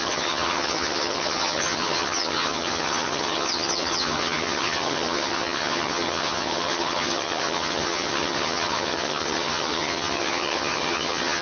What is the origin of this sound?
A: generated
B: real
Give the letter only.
A